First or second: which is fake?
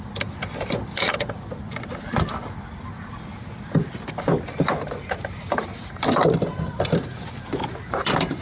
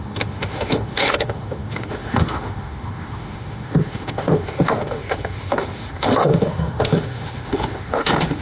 second